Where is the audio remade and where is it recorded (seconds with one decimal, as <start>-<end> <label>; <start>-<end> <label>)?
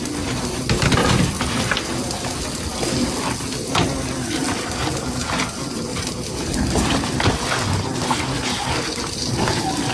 0.0-9.9 recorded